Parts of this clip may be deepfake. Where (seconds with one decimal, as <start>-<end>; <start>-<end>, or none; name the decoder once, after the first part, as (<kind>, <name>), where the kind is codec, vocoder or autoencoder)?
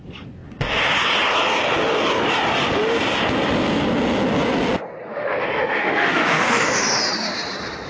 5.1-7.0 (autoencoder, DAC-VAE)